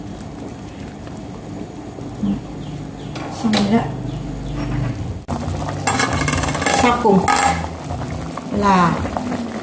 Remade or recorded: recorded